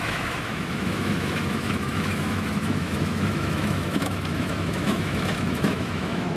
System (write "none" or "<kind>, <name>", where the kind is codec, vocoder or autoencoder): autoencoder, DAC-VAE